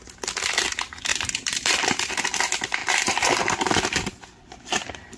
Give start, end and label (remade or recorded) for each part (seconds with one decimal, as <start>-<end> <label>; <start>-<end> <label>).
0.0-1.1 recorded; 1.1-2.4 remade; 2.4-2.8 recorded; 2.8-5.2 remade